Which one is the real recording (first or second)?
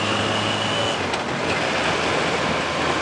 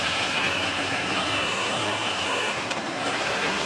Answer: first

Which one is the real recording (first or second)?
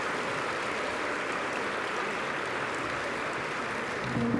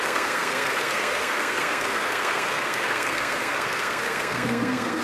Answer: first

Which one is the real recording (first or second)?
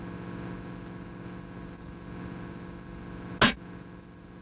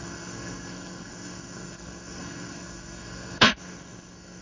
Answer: first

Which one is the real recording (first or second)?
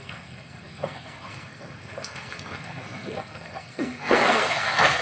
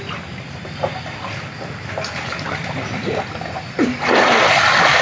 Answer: second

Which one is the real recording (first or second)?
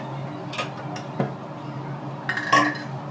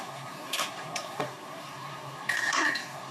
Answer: first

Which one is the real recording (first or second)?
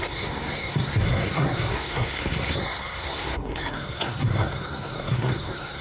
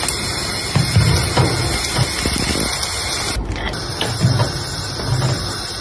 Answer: second